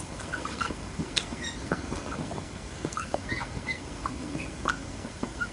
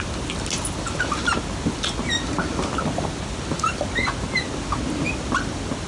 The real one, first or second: second